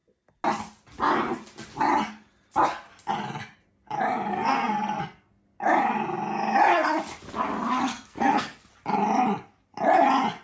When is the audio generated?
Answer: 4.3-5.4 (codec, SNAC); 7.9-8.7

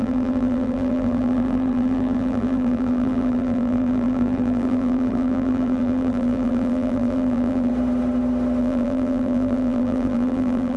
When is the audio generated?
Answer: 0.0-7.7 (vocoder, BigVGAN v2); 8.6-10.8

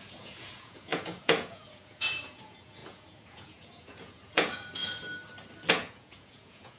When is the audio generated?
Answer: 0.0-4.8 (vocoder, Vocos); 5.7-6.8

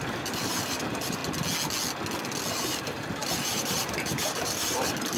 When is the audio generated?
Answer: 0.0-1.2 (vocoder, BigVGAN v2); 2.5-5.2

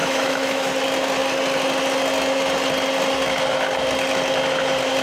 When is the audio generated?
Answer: 0.0-0.7 (autoencoder, DAC-VAE)

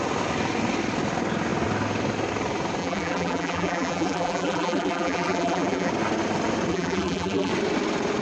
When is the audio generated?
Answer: 2.8-5.9 (vocoder, BigVGAN v2); 6.7-7.5